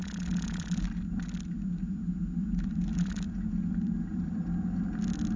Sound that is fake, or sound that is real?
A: real